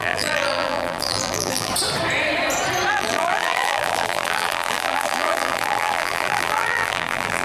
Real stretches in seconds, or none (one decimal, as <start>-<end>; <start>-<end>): 1.7-2.9